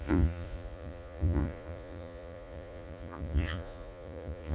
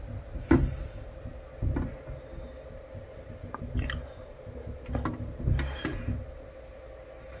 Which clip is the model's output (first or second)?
first